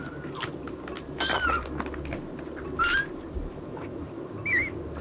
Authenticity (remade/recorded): recorded